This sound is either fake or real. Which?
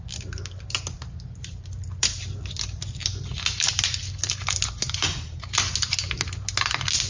real